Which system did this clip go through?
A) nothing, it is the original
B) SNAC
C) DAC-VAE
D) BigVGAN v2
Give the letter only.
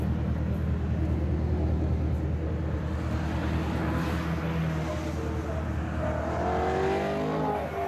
A